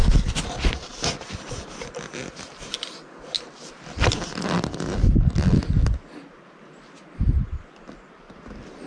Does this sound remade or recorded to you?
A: recorded